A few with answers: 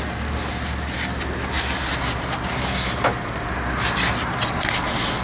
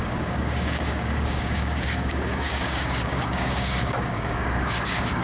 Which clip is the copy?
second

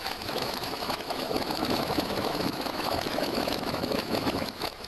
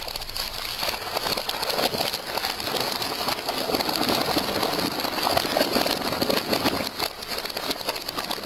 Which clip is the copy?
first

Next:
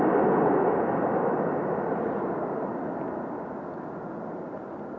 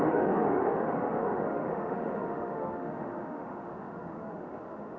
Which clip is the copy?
second